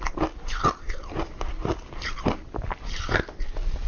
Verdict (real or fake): real